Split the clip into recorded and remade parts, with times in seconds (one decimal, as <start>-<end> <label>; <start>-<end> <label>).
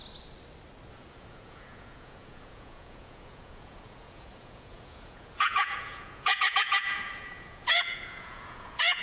0.0-0.9 recorded; 0.9-9.0 remade